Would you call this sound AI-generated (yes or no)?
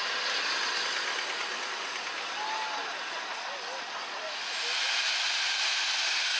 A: no